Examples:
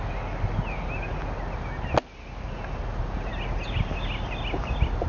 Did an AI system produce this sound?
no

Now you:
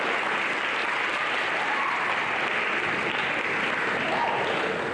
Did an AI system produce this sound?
no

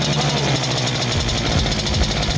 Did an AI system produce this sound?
no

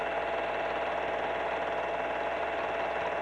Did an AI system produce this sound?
no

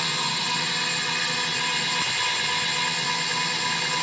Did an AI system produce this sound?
no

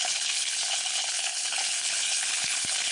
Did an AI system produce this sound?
yes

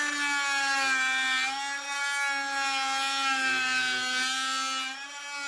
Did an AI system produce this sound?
no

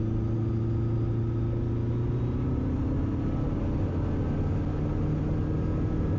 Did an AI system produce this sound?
no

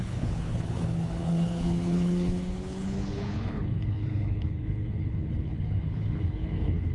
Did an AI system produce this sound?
yes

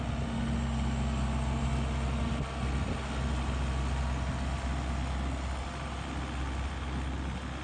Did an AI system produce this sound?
no